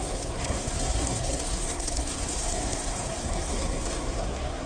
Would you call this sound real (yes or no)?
no